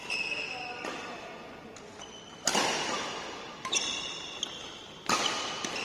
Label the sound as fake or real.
real